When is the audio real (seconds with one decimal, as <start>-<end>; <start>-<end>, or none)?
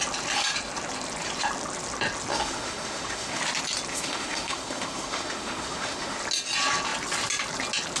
0.0-2.3; 3.4-3.9; 6.2-8.0